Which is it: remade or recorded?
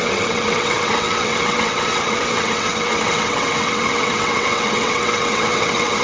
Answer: remade